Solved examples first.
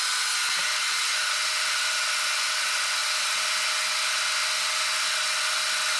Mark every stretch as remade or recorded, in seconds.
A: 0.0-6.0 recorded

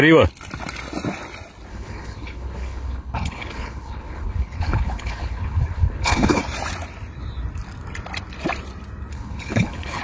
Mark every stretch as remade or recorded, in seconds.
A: 0.0-1.7 recorded; 1.7-6.4 remade; 6.4-9.1 recorded; 9.1-10.0 remade

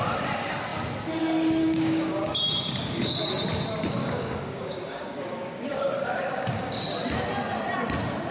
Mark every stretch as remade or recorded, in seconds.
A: 0.0-1.6 recorded; 1.6-3.3 remade; 3.3-4.0 recorded; 4.0-6.8 remade; 6.8-8.3 recorded

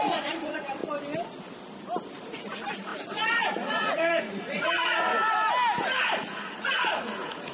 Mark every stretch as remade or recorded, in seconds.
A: 0.0-0.8 remade; 0.8-2.2 recorded; 2.2-5.1 remade; 5.1-5.8 recorded; 5.8-7.5 remade